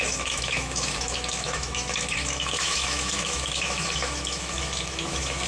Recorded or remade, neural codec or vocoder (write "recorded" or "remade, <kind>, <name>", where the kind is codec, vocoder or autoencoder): remade, autoencoder, DAC-VAE